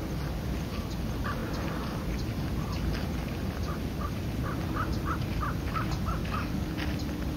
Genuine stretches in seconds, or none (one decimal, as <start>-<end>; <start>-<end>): 0.0-6.2; 6.7-7.4